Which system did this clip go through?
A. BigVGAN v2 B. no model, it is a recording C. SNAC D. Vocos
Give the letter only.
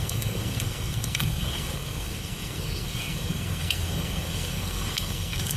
C